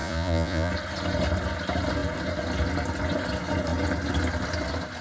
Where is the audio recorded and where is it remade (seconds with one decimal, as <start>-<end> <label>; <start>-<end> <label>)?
0.0-0.7 remade; 0.7-5.0 recorded